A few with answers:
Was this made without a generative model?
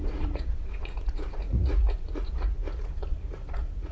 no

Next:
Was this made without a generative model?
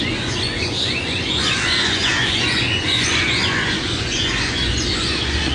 no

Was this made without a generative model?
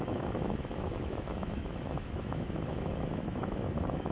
no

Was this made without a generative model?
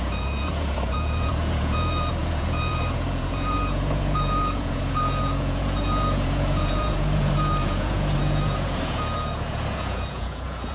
no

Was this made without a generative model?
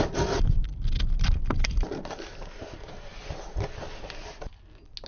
yes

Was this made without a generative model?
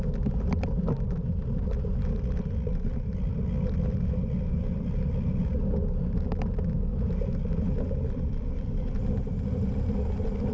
yes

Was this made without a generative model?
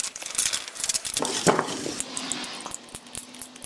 yes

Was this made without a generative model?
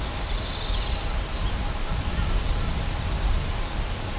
yes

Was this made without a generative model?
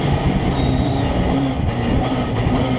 yes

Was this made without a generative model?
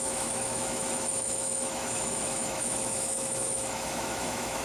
no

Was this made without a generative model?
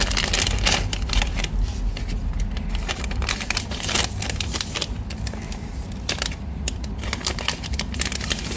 yes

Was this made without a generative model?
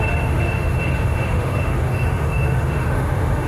no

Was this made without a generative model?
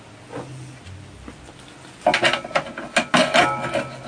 yes